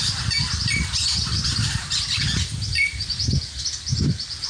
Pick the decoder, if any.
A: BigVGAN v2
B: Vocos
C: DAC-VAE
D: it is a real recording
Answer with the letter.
A